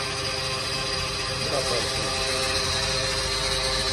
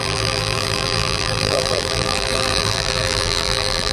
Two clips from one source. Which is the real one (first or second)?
first